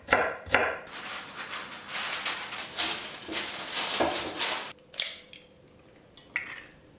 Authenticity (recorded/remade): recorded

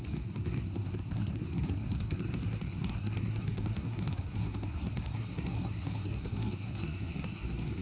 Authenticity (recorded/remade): remade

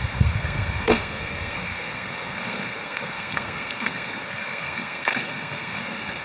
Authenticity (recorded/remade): remade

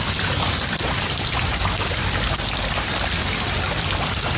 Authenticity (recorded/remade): recorded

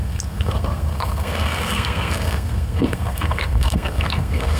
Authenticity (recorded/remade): remade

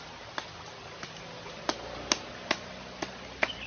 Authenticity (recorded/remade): recorded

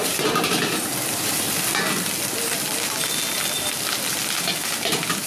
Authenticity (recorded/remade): recorded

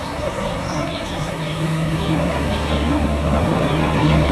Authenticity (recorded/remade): remade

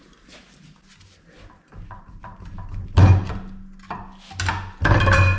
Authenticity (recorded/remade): recorded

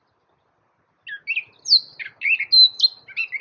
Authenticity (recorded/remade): recorded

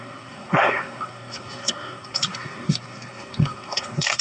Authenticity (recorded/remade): remade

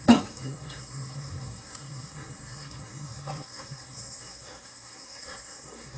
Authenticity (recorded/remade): remade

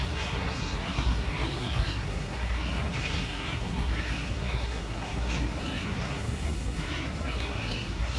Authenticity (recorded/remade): remade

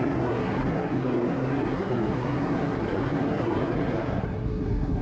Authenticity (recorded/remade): remade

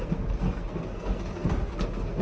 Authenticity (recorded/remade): remade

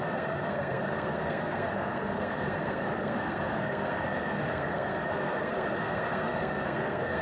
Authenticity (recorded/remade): remade